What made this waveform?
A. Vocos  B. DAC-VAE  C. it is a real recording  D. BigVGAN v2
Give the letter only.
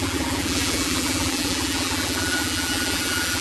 D